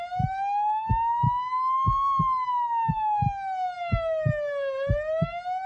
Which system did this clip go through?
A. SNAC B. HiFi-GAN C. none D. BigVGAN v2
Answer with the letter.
C